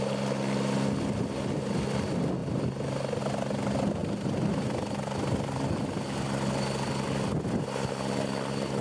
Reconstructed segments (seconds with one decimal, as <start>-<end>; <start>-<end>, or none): none